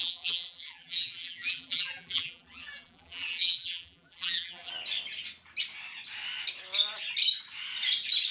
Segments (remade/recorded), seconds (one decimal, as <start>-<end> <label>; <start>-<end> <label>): 0.0-4.7 remade; 4.7-8.3 recorded